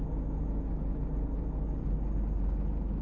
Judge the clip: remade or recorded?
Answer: recorded